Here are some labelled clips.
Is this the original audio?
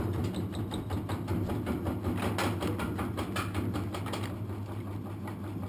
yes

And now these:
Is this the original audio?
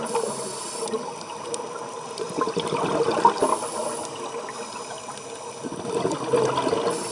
yes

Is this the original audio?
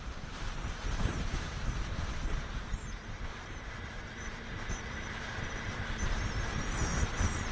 no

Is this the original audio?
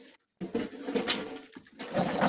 yes